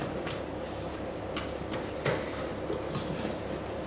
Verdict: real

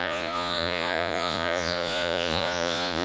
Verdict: fake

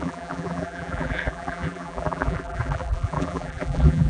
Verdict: fake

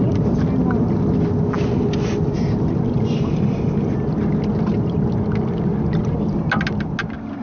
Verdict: real